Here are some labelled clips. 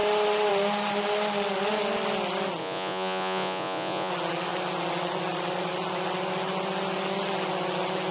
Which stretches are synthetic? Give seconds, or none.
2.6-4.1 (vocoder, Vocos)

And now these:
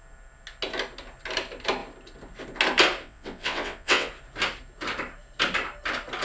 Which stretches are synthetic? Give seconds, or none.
3.0-4.1 (vocoder, WaveNeXt)

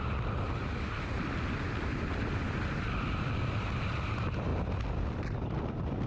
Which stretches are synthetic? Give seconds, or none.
none

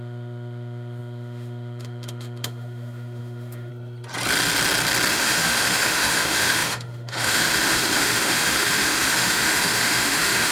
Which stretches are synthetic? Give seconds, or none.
0.0-3.7 (autoencoder, DAC-VAE); 5.1-10.5

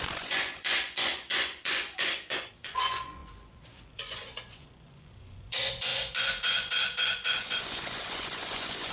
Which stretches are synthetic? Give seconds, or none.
0.0-8.9 (vocoder, Vocos)

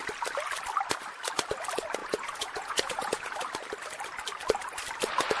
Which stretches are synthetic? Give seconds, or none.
2.0-3.3 (vocoder, Vocos)

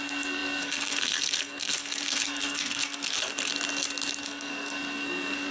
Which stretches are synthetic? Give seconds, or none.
0.0-3.3 (codec, SNAC); 4.2-5.5

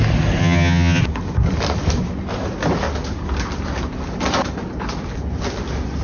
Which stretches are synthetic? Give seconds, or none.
0.4-1.0 (vocoder, HiFi-GAN)